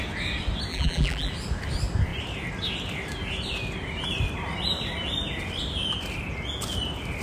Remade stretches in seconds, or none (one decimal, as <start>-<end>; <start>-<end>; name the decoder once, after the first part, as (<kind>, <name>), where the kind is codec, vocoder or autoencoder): 0.7-1.3 (vocoder, BigVGAN v2)